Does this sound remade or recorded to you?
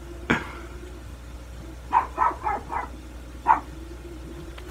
remade